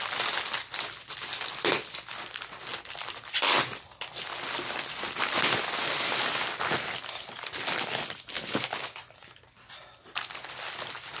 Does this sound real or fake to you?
real